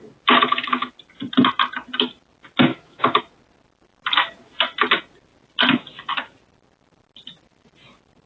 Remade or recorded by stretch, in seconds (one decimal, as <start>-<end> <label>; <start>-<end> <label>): 0.0-2.7 recorded; 2.7-3.2 remade; 3.2-8.3 recorded